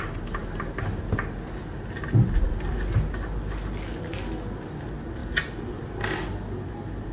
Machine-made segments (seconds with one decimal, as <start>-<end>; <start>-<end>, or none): none